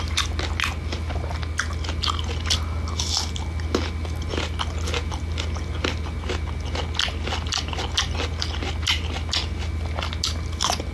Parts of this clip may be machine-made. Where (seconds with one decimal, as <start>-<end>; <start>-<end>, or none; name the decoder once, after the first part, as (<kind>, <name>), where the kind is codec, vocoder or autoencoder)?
none

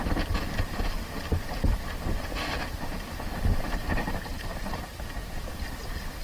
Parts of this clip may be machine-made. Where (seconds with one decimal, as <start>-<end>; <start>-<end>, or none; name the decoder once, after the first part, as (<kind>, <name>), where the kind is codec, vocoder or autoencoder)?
4.3-5.5 (vocoder, BigVGAN v2)

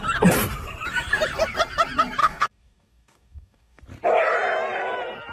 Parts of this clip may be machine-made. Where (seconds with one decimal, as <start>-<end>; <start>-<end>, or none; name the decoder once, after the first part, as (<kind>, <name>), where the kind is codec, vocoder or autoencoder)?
2.2-3.8 (codec, DAC)